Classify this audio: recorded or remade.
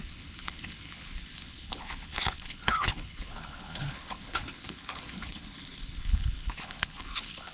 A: remade